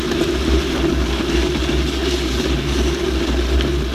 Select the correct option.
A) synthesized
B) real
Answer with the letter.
B